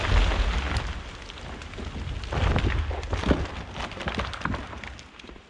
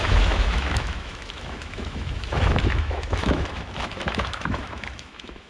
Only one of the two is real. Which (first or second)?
first